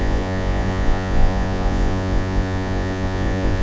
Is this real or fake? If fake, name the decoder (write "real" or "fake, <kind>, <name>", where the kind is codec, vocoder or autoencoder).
fake, vocoder, Vocos